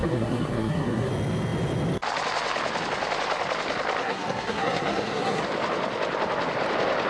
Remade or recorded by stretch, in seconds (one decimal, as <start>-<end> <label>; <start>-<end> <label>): 0.0-1.1 remade; 1.1-4.0 recorded; 4.0-5.4 remade; 5.4-7.1 recorded